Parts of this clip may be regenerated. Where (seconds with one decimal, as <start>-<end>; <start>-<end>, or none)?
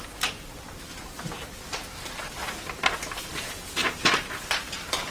none